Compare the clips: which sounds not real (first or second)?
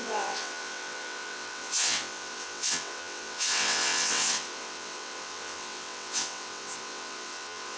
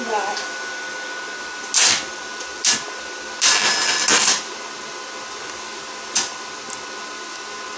first